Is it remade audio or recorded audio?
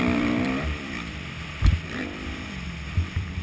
remade